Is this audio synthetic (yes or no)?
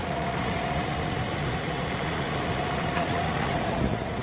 yes